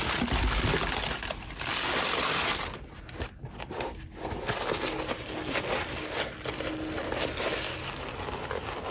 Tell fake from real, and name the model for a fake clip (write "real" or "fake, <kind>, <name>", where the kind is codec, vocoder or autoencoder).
real